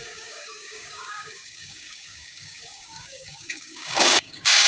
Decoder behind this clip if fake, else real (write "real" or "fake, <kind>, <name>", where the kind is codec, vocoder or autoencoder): fake, codec, DAC